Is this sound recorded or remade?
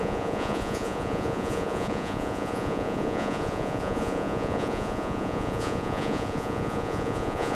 remade